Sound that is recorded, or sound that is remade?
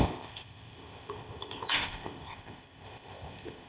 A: remade